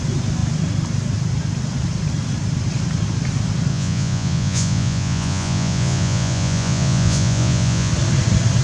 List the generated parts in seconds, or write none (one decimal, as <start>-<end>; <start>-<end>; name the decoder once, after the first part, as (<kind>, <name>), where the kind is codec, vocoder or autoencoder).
3.7-7.9 (vocoder, Vocos)